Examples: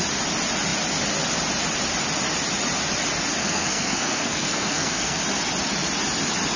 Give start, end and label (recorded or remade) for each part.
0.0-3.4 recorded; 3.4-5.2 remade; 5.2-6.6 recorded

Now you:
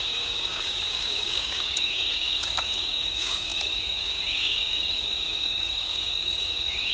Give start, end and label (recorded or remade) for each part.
0.0-6.9 remade

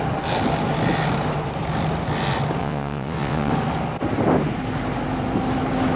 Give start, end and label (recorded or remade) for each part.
0.0-2.6 recorded; 2.6-3.5 remade; 3.5-6.0 recorded

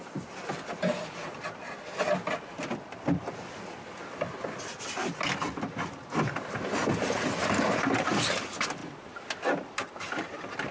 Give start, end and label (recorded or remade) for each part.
0.0-10.7 recorded

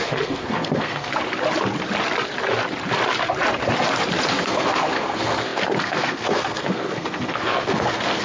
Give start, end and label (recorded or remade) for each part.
0.0-1.1 remade; 1.1-4.3 recorded; 4.3-8.2 remade

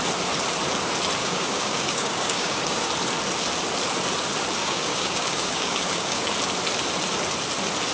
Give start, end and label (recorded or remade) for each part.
0.0-1.2 recorded; 1.2-2.9 remade; 2.9-4.6 recorded; 4.6-6.2 remade; 6.2-7.9 recorded